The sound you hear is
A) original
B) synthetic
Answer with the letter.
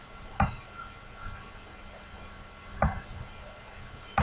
A